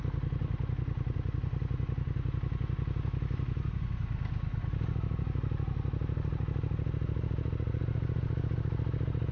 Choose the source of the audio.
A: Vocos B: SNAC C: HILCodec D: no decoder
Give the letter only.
D